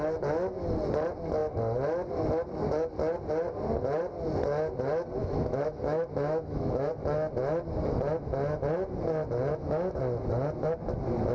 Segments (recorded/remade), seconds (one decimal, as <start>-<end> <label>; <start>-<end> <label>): 0.0-5.2 recorded; 5.2-6.9 remade; 6.9-9.5 recorded; 9.5-10.0 remade; 10.0-11.3 recorded